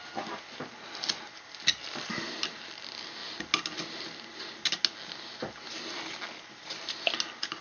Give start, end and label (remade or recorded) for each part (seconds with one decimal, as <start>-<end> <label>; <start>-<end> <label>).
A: 0.0-7.6 recorded